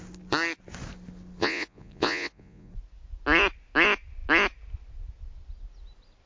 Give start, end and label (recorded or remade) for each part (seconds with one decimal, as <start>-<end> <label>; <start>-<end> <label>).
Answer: 0.0-1.4 recorded; 1.4-2.7 remade; 2.7-6.3 recorded